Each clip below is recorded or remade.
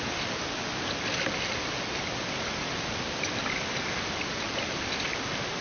recorded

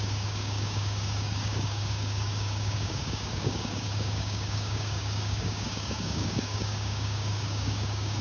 remade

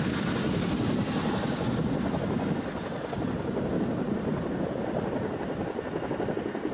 recorded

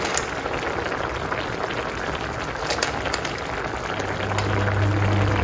recorded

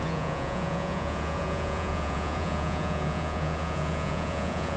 remade